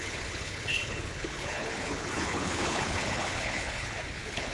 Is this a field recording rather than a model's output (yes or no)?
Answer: no